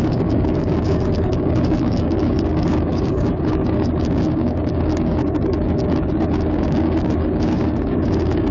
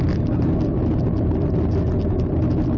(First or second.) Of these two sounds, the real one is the second